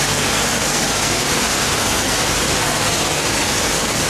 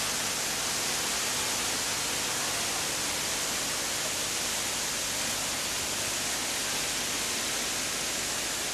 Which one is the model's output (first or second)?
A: first